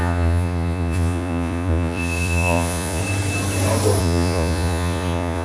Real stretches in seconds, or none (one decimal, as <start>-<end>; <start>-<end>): 3.0-4.0